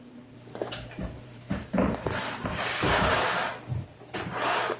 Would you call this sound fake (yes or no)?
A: yes